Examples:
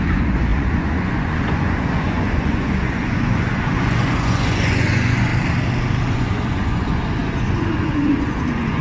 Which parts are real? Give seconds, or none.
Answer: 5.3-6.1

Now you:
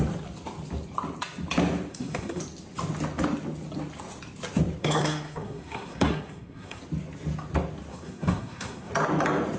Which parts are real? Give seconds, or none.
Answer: 0.0-1.9; 2.4-4.8; 6.8-7.9; 8.9-9.6

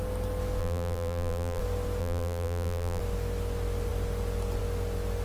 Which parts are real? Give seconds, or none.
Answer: 0.0-0.6; 1.6-2.0; 3.0-5.2

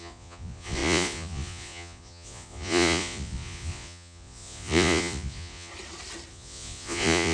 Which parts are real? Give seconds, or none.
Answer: 5.7-6.3

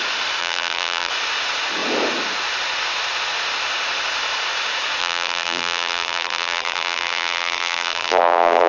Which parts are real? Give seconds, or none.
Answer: 0.0-0.4; 1.1-5.0